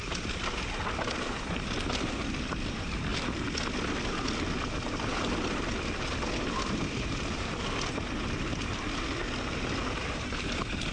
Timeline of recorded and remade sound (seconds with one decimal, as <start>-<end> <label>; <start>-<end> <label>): 0.0-3.1 remade; 3.1-4.6 recorded; 4.6-10.9 remade